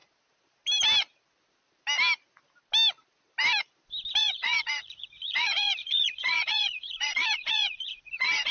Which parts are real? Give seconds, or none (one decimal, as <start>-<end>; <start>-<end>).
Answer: 0.0-4.2